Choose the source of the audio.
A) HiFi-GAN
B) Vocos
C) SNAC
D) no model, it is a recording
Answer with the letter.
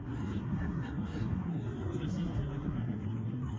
C